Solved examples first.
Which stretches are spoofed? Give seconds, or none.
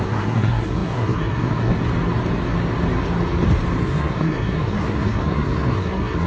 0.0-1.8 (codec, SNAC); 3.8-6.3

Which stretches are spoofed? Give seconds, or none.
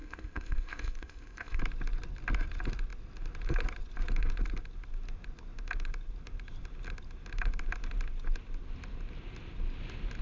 0.0-1.6 (codec, ZipCodec)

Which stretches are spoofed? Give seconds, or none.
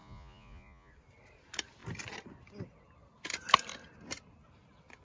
0.0-0.9 (vocoder, Vocos)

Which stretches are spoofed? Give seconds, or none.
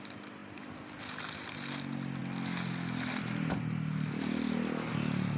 none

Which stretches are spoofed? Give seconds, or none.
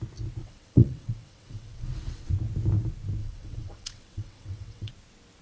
0.4-2.3 (vocoder, WaveNeXt); 3.2-4.9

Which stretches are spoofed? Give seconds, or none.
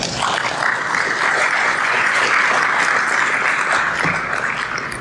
1.3-2.2 (vocoder, Vocos)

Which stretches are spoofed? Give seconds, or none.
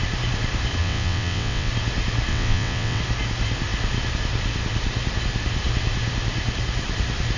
0.8-1.7 (vocoder, WaveNeXt); 2.3-3.0